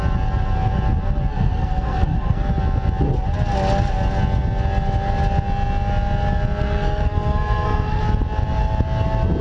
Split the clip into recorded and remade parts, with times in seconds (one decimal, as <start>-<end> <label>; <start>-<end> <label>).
0.0-1.3 recorded; 1.3-2.5 remade; 2.5-6.6 recorded; 6.6-8.0 remade; 8.0-9.4 recorded